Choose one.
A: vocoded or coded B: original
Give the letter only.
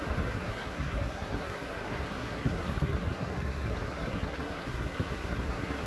A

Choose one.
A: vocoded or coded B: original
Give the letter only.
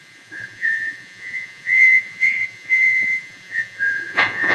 A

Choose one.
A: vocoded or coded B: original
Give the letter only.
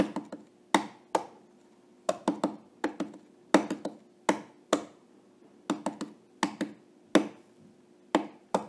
B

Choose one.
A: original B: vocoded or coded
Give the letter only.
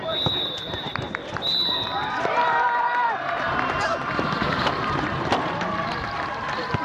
B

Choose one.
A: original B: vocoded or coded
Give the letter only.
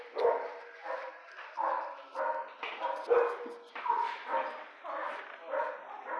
A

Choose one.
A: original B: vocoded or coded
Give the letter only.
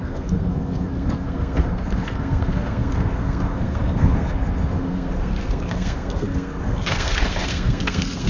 B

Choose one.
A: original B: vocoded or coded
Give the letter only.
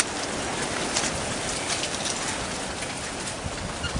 A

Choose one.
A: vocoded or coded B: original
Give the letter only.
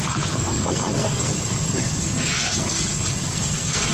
A